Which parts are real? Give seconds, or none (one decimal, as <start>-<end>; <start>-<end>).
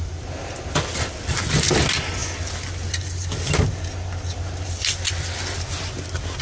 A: 0.0-6.4